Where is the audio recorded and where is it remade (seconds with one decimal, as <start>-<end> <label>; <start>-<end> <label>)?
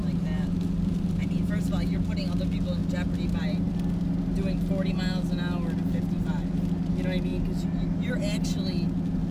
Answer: 0.0-1.5 remade; 1.5-9.3 recorded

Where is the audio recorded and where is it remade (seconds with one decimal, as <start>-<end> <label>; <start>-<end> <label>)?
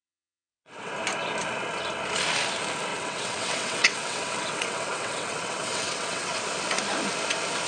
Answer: 0.0-0.9 remade; 0.9-2.9 recorded; 2.9-6.4 remade; 6.4-7.7 recorded